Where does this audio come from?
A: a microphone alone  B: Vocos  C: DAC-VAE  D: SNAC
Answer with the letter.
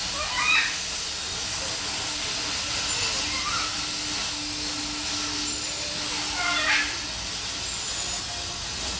A